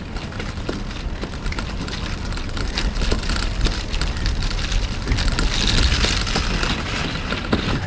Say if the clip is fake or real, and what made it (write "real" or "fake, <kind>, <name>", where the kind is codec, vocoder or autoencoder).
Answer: real